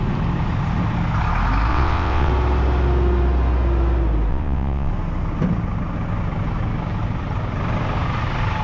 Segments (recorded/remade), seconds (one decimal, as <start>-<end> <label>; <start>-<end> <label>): 0.0-1.7 recorded; 1.7-2.3 remade; 2.3-4.3 recorded; 4.3-4.9 remade; 4.9-8.6 recorded